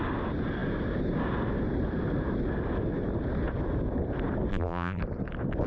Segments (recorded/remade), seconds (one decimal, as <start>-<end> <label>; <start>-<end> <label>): 0.0-4.5 recorded; 4.5-5.0 remade; 5.0-5.7 recorded